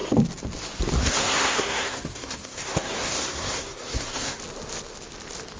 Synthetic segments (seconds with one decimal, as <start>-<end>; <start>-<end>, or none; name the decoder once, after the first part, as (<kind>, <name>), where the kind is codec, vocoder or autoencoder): 1.0-4.4 (codec, SNAC)